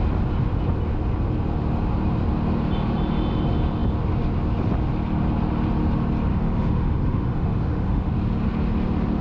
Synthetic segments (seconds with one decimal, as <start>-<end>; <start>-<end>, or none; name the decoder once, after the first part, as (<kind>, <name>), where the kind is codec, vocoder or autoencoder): 6.3-8.1 (autoencoder, DAC-VAE)